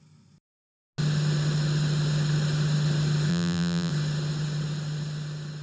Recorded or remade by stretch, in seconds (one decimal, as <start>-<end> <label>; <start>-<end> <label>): 0.0-3.3 recorded; 3.3-3.9 remade; 3.9-5.6 recorded